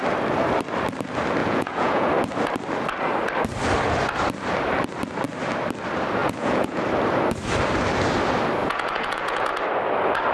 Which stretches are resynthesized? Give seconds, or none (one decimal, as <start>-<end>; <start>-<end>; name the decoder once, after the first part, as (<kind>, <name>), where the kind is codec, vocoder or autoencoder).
1.4-2.1 (vocoder, Vocos); 6.2-6.8; 8.6-9.5